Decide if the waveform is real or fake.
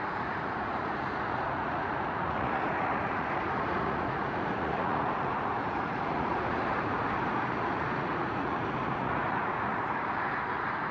fake